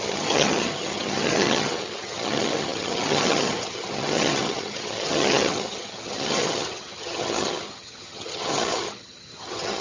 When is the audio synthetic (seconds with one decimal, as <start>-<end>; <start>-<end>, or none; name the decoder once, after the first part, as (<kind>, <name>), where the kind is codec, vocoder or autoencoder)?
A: 0.0-9.8 (vocoder, HiFi-GAN)